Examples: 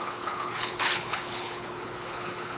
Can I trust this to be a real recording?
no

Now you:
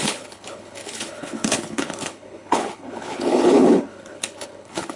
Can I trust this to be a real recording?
no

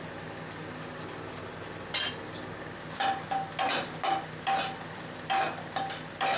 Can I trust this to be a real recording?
yes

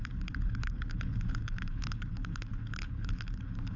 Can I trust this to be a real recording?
no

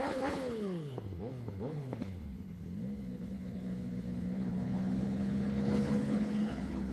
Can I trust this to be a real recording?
no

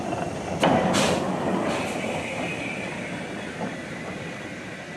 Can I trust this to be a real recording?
yes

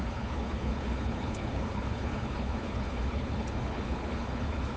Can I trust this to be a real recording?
no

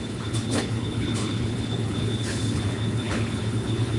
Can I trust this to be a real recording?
no